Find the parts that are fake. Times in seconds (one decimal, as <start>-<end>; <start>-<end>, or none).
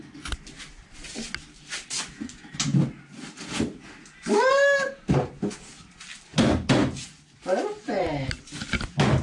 none